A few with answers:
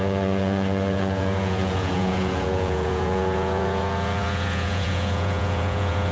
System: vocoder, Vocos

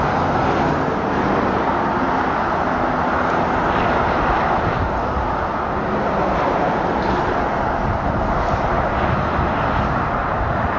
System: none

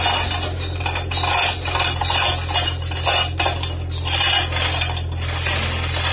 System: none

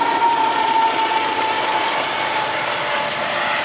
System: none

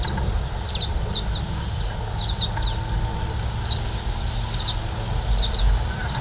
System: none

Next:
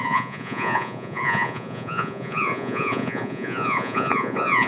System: vocoder, Vocos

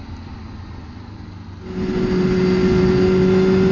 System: none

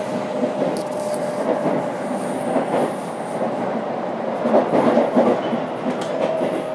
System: none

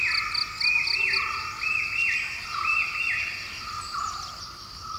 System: none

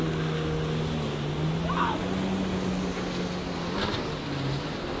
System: none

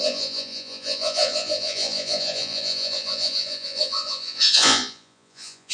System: vocoder, Vocos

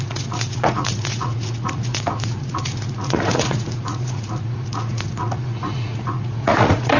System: vocoder, Vocos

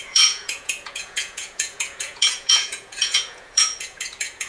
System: vocoder, Vocos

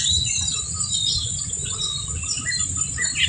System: none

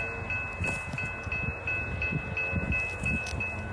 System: none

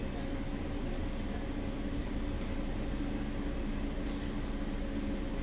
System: none